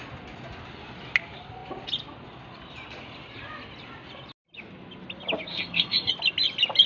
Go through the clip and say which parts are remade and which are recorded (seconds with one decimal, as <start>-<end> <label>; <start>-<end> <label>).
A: 0.0-5.5 recorded; 5.5-6.1 remade; 6.1-6.9 recorded